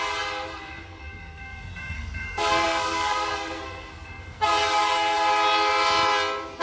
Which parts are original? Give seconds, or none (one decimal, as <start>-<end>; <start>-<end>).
0.0-0.5; 4.5-6.6